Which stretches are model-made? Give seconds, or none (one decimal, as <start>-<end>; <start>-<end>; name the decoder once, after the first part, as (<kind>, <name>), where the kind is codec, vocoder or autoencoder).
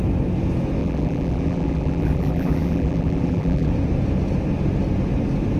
0.8-3.7 (vocoder, BigVGAN v2)